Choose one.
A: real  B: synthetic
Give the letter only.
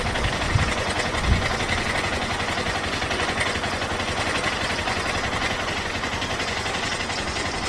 B